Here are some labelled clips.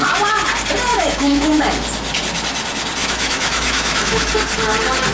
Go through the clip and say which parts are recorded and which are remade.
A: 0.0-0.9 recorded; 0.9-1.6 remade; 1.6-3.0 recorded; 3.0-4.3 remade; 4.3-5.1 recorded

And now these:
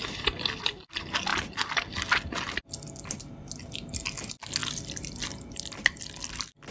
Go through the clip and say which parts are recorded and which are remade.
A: 0.0-4.6 recorded; 4.6-6.0 remade; 6.0-6.7 recorded

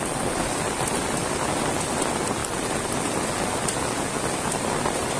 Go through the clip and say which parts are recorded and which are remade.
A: 0.0-5.2 recorded